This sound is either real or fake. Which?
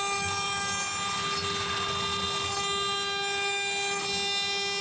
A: real